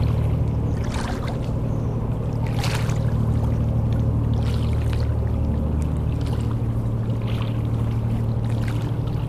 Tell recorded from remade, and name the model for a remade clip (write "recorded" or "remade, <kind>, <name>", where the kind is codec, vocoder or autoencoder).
recorded